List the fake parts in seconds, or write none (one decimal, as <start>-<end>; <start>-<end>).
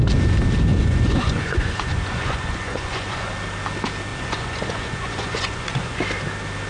0.7-3.3; 4.1-6.0